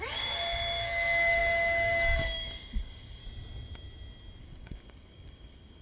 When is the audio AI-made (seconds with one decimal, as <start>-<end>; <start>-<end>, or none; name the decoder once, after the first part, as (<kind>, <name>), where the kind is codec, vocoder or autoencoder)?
0.0-3.2 (codec, DAC); 4.4-5.8